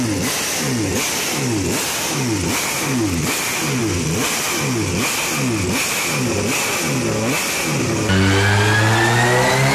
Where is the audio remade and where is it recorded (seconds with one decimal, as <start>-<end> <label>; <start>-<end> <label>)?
0.0-9.7 recorded